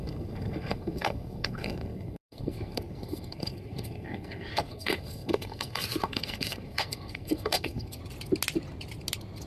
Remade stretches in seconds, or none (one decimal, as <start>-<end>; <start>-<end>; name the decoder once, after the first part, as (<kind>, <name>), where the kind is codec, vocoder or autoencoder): 0.0-8.0 (codec, SNAC)